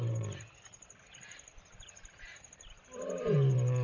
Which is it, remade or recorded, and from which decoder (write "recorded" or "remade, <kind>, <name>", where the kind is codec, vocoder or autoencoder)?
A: remade, vocoder, BigVGAN v2